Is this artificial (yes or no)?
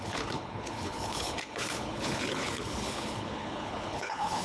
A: yes